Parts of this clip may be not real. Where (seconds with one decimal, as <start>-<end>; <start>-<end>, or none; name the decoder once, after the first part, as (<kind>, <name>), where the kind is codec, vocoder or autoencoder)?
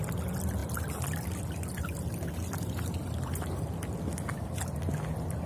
none